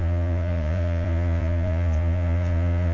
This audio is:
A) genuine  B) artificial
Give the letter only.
B